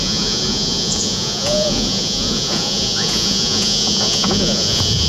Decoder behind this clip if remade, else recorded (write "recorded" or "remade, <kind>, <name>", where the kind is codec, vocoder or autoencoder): remade, vocoder, Vocos